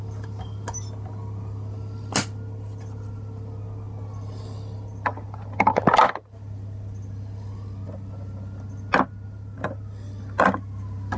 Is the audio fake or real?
real